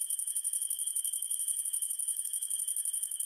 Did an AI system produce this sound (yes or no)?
yes